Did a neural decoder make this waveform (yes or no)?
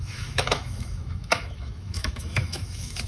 yes